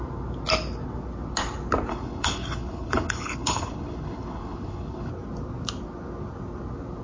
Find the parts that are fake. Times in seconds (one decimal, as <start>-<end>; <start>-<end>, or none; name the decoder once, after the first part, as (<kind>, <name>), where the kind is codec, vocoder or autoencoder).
1.9-5.1 (codec, HILCodec)